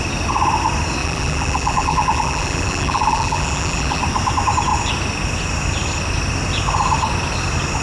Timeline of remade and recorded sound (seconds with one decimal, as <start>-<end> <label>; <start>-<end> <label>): 0.0-1.0 recorded; 1.0-4.0 remade; 4.0-7.8 recorded